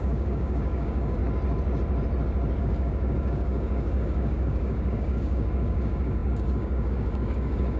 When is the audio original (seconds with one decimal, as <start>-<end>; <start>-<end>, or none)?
1.2-2.6